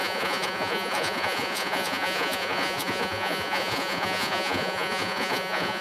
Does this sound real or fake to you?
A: fake